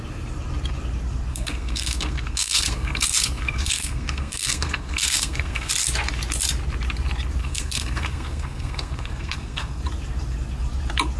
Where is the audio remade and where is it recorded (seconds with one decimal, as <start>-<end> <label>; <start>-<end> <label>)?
0.0-1.3 recorded; 1.3-5.7 remade; 5.7-7.4 recorded; 7.4-9.8 remade; 9.8-11.2 recorded